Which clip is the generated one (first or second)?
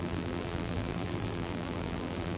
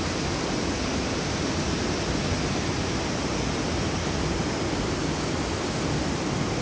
first